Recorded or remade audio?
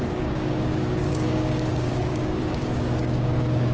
remade